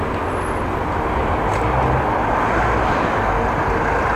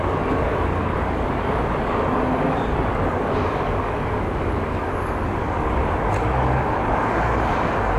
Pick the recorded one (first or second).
first